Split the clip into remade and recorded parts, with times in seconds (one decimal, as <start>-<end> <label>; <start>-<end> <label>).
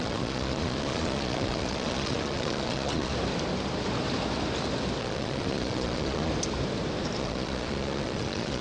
0.0-3.1 remade; 3.1-5.0 recorded; 5.0-6.3 remade; 6.3-7.2 recorded; 7.2-8.6 remade